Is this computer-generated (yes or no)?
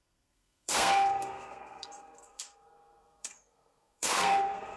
yes